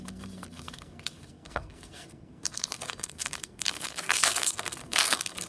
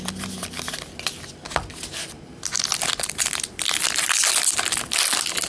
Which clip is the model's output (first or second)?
first